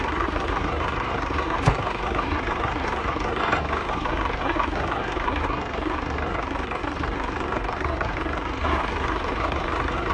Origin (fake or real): fake